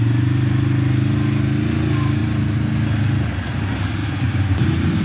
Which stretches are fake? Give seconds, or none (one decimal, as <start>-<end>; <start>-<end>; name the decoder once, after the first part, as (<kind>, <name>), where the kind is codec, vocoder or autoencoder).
2.2-2.7 (vocoder, BigVGAN v2); 4.0-5.0